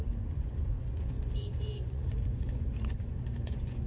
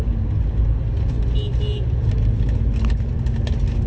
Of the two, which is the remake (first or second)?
first